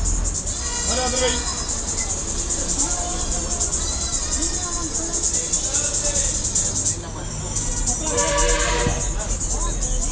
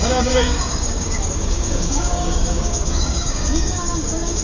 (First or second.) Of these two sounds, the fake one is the second